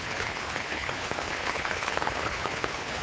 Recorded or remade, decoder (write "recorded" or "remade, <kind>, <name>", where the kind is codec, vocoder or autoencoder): remade, codec, HILCodec